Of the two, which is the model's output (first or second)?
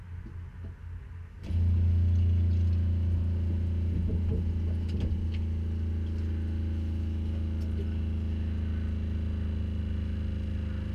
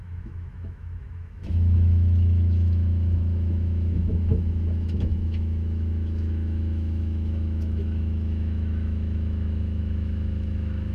second